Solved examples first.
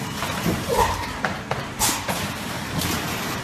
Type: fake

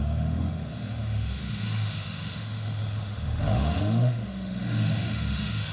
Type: fake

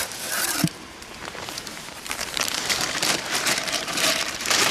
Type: fake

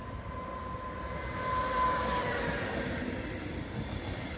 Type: real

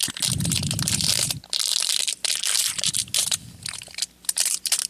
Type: real